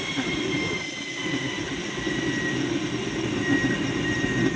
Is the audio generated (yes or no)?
no